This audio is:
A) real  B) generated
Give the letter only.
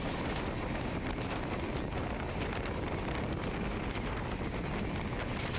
A